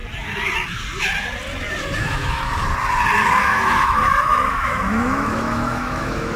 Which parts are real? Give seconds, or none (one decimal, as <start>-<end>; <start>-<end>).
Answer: 0.0-2.0; 2.6-3.4